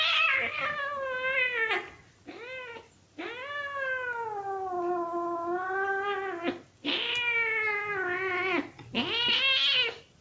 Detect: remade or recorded recorded